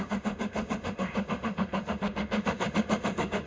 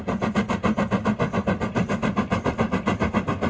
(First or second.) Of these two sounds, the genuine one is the second